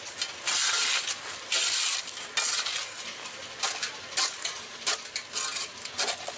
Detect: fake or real real